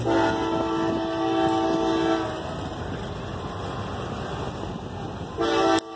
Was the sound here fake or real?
real